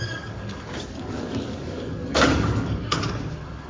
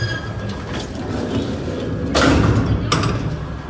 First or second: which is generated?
first